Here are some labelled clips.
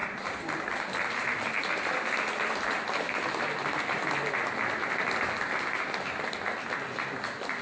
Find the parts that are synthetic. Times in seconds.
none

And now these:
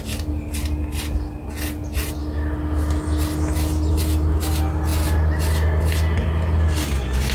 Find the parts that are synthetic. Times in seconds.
none

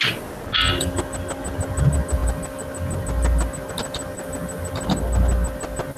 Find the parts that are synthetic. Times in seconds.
none

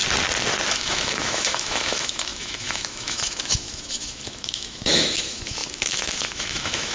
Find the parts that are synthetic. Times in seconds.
0.7-6.9 (autoencoder, DAC-VAE)

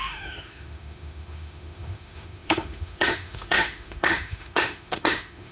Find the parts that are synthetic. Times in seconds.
0.0-5.5 (autoencoder, DAC-VAE)

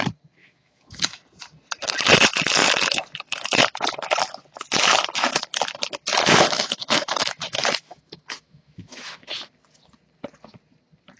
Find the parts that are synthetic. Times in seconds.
0.4-1.2 (autoencoder, DAC-VAE); 6.1-9.3